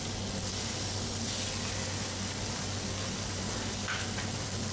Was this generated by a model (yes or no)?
no